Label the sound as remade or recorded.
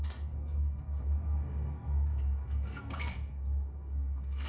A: remade